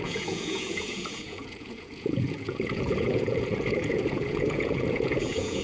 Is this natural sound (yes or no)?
no